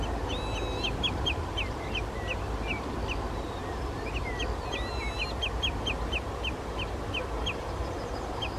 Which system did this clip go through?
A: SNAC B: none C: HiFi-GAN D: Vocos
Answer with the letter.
B